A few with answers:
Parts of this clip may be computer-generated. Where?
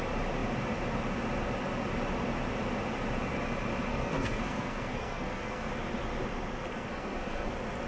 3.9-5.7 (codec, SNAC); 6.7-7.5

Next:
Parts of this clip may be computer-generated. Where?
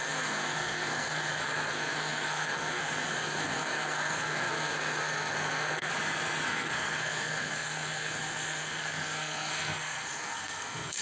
0.0-5.9 (codec, SNAC); 6.5-11.0